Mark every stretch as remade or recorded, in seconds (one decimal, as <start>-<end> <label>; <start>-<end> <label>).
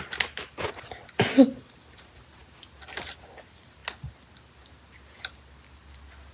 0.0-6.3 recorded